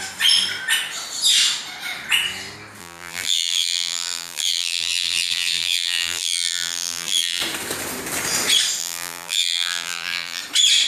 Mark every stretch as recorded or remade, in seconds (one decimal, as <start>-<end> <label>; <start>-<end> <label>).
0.0-2.8 recorded; 2.8-7.4 remade; 7.4-8.8 recorded; 8.8-10.4 remade; 10.4-10.9 recorded